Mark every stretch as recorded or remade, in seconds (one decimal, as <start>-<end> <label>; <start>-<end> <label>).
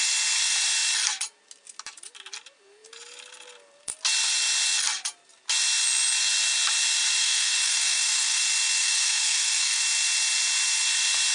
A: 0.0-7.2 recorded; 7.2-8.4 remade; 8.4-8.8 recorded; 8.8-9.8 remade; 9.8-11.3 recorded